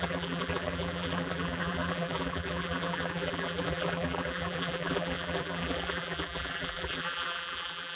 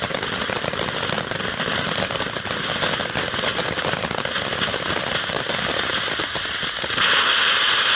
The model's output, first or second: first